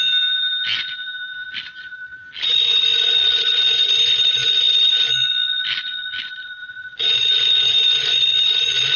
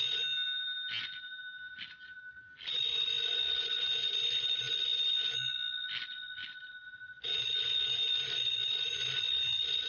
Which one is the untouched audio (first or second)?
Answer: second